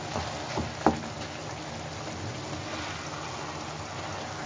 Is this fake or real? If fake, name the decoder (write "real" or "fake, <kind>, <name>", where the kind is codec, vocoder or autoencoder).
real